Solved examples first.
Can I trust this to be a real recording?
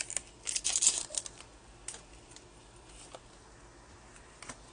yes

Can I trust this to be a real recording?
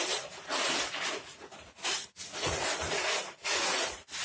no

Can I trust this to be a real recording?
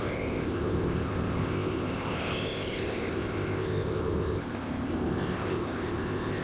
no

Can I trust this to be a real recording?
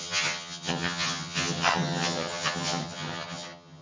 no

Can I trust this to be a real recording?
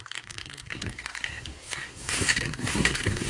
no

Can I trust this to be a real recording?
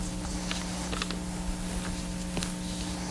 yes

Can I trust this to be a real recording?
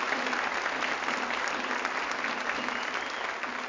yes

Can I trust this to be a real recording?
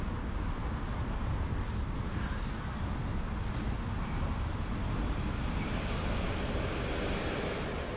yes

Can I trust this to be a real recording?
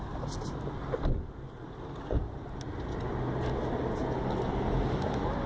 yes